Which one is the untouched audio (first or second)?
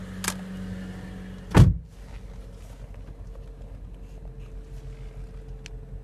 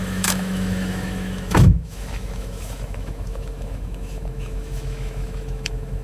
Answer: first